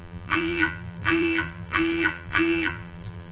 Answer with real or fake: fake